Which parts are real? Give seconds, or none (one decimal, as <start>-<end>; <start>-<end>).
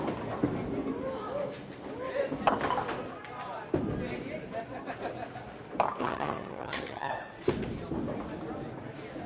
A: 0.0-6.0; 7.1-9.3